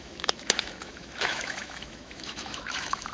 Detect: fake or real fake